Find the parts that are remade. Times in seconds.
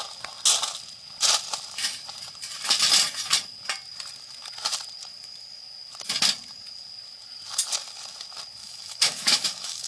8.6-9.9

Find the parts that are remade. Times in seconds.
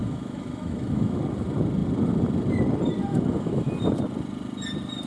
0.0-1.2; 3.1-3.7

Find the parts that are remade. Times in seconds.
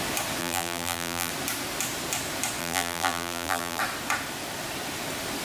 0.4-1.3; 2.6-3.8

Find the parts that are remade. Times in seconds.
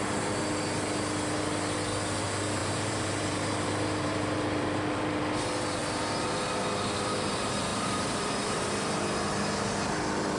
2.6-5.2; 5.8-6.4; 7.7-8.7